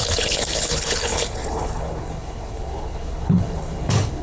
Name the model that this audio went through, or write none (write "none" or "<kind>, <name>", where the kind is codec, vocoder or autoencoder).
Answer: codec, HILCodec